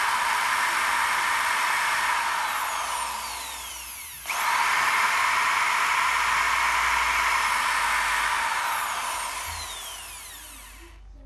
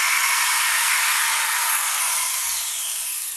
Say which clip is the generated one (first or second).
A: second